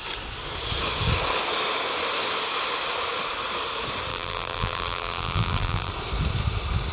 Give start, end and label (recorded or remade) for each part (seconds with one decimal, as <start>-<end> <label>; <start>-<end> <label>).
0.0-4.1 recorded; 4.1-5.9 remade; 5.9-6.9 recorded